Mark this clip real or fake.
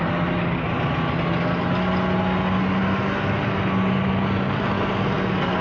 real